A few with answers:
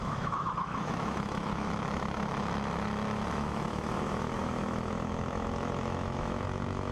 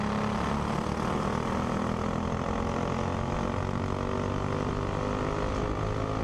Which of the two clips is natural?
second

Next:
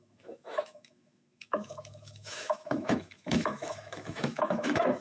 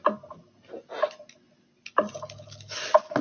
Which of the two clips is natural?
second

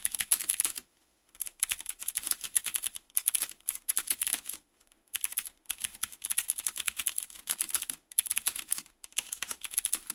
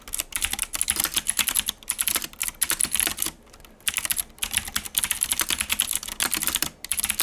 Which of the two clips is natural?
second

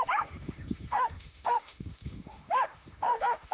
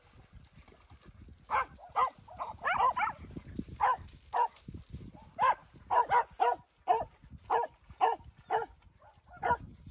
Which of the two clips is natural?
second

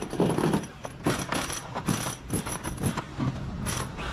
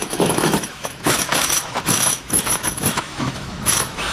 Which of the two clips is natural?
first